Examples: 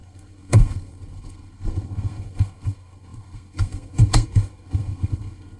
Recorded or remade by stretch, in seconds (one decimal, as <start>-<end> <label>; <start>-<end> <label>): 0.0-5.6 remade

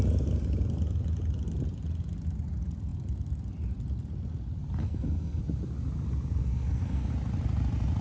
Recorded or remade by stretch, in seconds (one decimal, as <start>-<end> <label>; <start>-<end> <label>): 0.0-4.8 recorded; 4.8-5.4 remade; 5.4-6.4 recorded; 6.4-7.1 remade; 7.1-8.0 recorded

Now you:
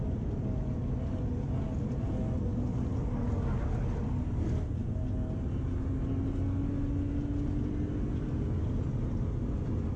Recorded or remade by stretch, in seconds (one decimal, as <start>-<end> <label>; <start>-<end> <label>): 0.0-10.0 recorded

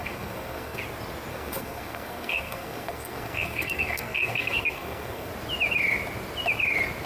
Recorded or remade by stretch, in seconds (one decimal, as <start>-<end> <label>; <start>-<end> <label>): 0.0-0.8 remade; 0.8-1.3 recorded; 1.3-5.3 remade; 5.3-7.1 recorded